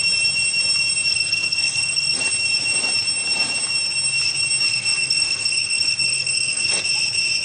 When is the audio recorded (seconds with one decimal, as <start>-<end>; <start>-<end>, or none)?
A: 0.0-1.1; 2.2-4.7; 6.8-7.4